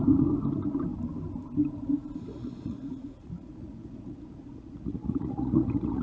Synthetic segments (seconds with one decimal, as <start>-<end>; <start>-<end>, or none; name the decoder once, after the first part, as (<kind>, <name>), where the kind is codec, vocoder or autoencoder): 2.3-6.0 (vocoder, Vocos)